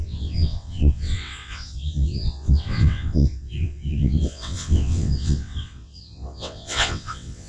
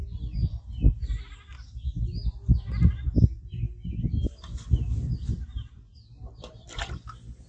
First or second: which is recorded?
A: second